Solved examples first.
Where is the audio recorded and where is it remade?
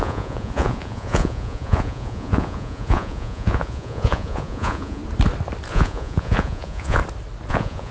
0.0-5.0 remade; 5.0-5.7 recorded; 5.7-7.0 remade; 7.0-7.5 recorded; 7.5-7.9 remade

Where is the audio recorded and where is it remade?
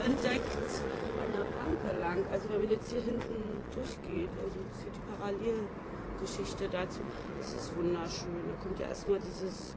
0.0-2.0 remade; 2.0-2.6 recorded; 2.6-4.3 remade; 4.3-7.0 recorded; 7.0-7.6 remade; 7.6-8.8 recorded; 8.8-9.8 remade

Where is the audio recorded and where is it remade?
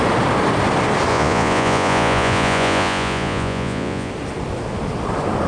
0.0-1.1 recorded; 1.1-4.1 remade; 4.1-5.5 recorded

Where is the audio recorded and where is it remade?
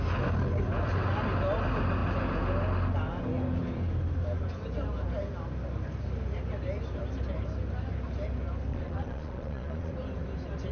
0.0-8.7 recorded; 8.7-9.9 remade; 9.9-10.7 recorded